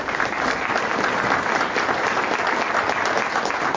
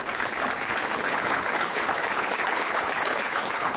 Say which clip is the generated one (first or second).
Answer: second